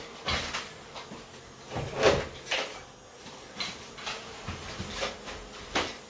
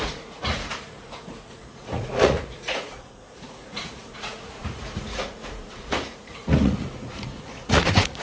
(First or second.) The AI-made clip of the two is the second